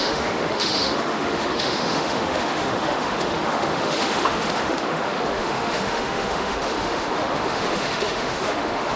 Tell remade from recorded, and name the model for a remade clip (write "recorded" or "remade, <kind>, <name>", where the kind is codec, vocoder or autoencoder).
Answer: remade, autoencoder, DAC-VAE